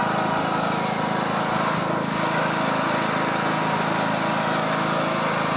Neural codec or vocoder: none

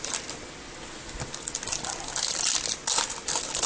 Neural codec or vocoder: none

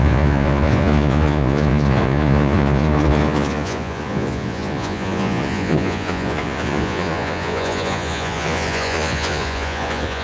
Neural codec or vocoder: vocoder, Vocos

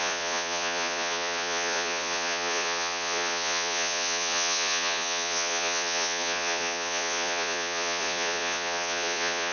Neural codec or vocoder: vocoder, Vocos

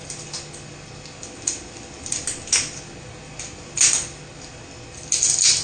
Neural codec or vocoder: none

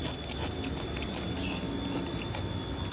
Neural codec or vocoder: none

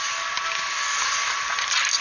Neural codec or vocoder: none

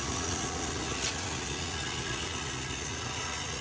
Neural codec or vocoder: vocoder, Vocos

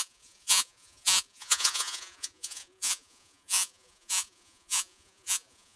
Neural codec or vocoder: vocoder, Vocos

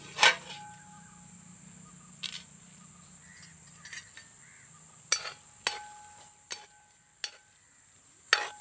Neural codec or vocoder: none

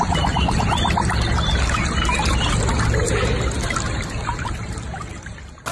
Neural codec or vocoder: none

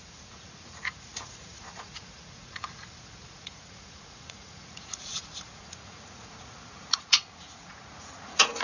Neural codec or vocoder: vocoder, Vocos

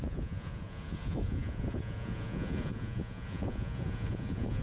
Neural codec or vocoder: vocoder, Vocos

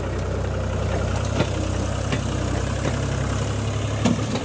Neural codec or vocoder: none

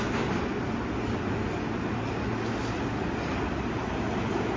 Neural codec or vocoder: none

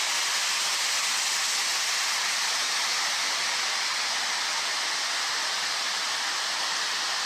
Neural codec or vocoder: none